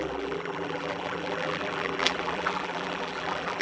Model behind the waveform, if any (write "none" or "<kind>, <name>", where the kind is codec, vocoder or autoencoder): vocoder, BigVGAN v2